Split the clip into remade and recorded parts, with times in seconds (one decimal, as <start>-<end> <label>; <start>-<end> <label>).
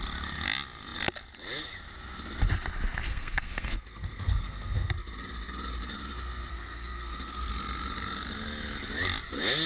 0.0-3.1 recorded; 3.1-4.9 remade; 4.9-6.5 recorded; 6.5-7.5 remade; 7.5-9.7 recorded